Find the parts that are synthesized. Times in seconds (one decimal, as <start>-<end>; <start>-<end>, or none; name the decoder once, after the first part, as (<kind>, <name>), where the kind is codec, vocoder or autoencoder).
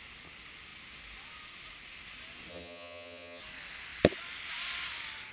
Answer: 2.5-3.4 (vocoder, HiFi-GAN)